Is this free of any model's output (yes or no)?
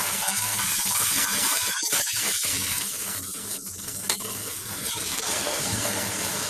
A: no